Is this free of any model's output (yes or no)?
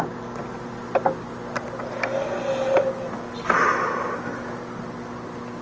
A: yes